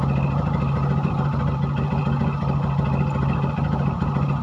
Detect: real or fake real